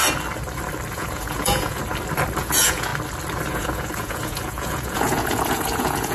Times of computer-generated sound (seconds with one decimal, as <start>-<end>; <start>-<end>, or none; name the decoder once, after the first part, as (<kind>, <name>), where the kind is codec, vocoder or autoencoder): 0.9-1.8 (vocoder, Vocos); 2.4-2.9; 3.5-6.1